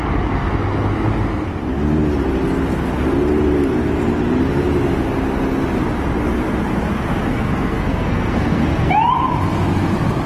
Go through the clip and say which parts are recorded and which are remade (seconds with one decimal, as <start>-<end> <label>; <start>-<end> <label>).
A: 0.0-7.3 recorded; 7.3-8.9 remade; 8.9-10.3 recorded